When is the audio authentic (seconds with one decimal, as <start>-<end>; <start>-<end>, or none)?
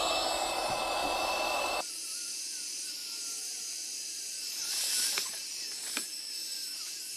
0.0-1.0; 1.9-3.0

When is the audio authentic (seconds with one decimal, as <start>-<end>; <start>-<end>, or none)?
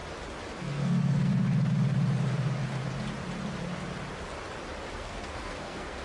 0.0-0.6; 1.3-4.9